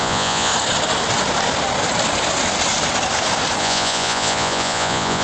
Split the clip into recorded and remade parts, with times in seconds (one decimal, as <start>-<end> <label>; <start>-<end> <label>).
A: 0.0-0.5 remade; 0.5-3.6 recorded; 3.6-5.2 remade